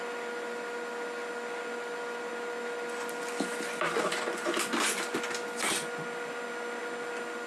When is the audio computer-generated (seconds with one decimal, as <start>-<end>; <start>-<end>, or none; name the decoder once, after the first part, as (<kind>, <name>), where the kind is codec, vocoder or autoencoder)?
none